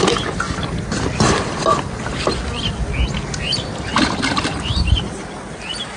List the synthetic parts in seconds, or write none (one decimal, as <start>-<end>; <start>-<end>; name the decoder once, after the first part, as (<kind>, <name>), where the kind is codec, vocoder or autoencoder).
3.9-5.3 (vocoder, BigVGAN v2)